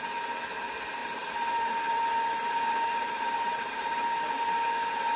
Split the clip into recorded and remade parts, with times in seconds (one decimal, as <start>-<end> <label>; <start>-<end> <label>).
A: 0.0-1.0 recorded; 1.0-1.7 remade; 1.7-2.1 recorded; 2.1-4.3 remade; 4.3-5.2 recorded